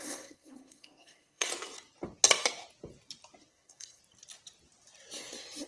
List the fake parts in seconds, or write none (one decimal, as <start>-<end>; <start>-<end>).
0.0-1.5; 3.5-4.0